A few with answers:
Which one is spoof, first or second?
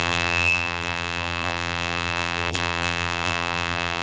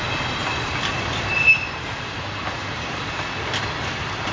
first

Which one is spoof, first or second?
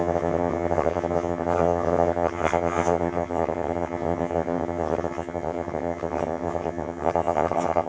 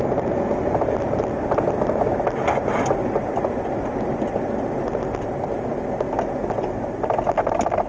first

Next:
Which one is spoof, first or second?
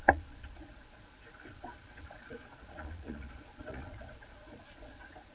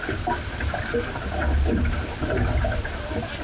first